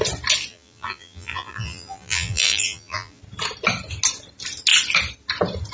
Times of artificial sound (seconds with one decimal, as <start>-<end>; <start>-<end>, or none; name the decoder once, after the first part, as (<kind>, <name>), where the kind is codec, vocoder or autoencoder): 0.5-3.2 (vocoder, BigVGAN v2)